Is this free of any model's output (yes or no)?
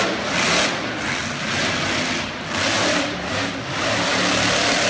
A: yes